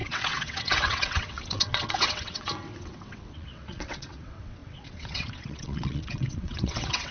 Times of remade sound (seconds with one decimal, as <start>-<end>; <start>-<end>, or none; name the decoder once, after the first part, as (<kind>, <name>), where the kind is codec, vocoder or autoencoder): 0.0-7.1 (vocoder, WaveNeXt)